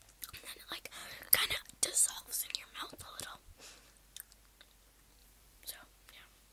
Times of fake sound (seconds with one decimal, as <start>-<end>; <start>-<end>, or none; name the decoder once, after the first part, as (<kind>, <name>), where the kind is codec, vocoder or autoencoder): 5.2-5.7 (vocoder, BigVGAN v2)